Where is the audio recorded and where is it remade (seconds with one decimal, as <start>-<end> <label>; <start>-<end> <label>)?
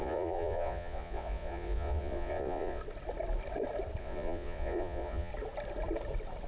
0.0-2.8 remade; 2.8-4.0 recorded; 4.0-5.3 remade; 5.3-6.5 recorded